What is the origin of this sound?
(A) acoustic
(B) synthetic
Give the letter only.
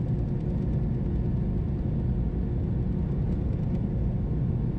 A